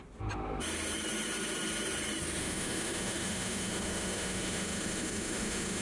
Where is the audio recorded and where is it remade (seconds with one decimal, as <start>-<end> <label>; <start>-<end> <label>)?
0.0-2.4 recorded; 2.4-5.8 remade